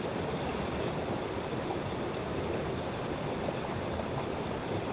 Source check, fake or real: fake